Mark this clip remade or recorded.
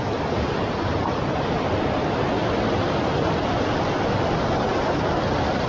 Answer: recorded